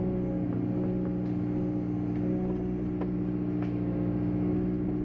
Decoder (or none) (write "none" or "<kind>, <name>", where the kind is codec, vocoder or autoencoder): none